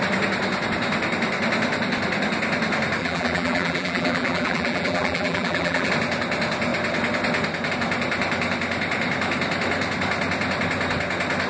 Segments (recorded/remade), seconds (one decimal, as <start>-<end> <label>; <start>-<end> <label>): 0.0-3.0 recorded; 3.0-5.9 remade; 5.9-11.5 recorded